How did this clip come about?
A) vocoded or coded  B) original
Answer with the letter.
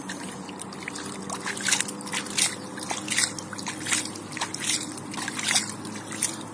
B